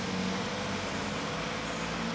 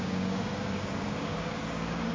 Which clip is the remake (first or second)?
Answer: second